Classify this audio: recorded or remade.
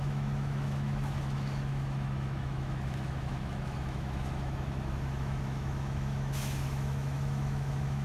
remade